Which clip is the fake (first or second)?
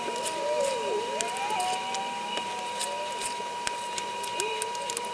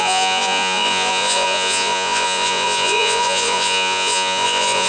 second